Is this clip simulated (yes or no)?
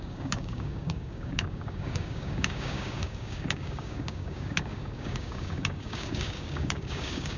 yes